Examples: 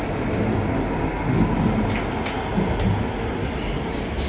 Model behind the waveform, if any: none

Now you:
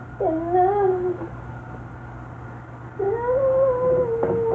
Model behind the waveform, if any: none